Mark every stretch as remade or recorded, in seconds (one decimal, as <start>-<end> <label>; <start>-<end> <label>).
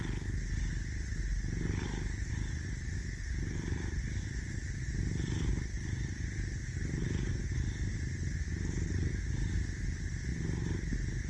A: 0.0-11.3 recorded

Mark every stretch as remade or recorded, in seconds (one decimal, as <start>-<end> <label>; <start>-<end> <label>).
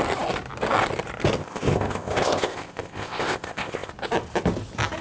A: 0.0-1.4 recorded; 1.4-3.9 remade; 3.9-5.0 recorded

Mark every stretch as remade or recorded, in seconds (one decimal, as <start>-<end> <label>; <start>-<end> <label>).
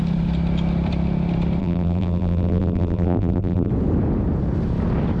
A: 0.0-1.6 recorded; 1.6-3.7 remade; 3.7-5.2 recorded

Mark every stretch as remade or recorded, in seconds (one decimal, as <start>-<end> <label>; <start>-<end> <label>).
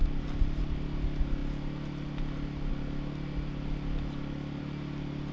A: 0.0-5.3 recorded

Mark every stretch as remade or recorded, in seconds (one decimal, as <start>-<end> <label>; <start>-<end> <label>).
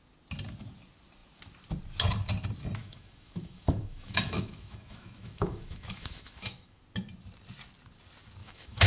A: 0.0-2.8 recorded; 2.8-6.8 remade; 6.8-8.4 recorded; 8.4-8.9 remade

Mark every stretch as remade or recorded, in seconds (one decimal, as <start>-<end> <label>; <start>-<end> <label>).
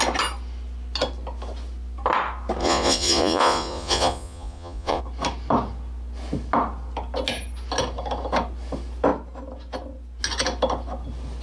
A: 0.0-2.6 recorded; 2.6-5.0 remade; 5.0-11.4 recorded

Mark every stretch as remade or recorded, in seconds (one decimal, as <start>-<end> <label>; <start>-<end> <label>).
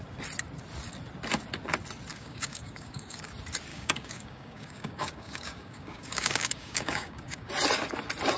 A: 0.0-2.1 recorded; 2.1-3.3 remade; 3.3-3.7 recorded; 3.7-7.5 remade; 7.5-8.4 recorded